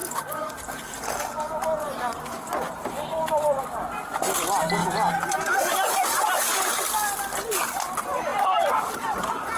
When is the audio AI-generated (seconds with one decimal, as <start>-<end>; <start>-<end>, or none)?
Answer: 3.6-4.8; 5.5-9.6